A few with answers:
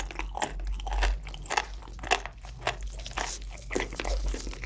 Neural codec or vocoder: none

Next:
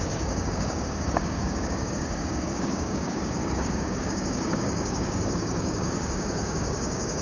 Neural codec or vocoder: codec, DAC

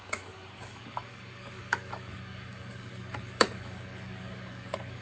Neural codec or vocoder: codec, DAC